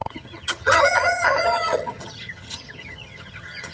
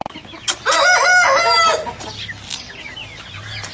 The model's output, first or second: first